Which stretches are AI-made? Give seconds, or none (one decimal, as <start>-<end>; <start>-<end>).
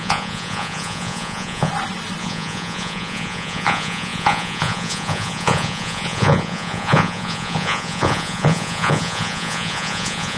0.0-1.7; 2.2-10.4